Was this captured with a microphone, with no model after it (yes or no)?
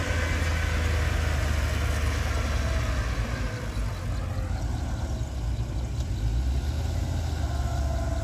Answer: yes